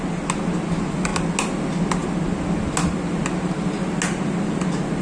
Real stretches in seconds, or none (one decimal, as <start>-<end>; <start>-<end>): 0.0-5.0